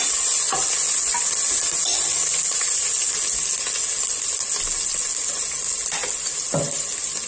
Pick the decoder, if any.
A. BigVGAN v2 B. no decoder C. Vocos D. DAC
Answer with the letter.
B